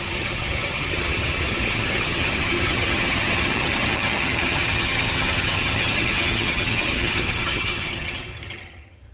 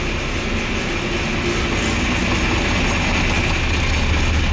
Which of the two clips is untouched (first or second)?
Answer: second